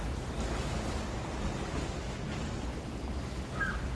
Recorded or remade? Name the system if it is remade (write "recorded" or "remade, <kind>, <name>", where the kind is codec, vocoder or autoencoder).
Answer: recorded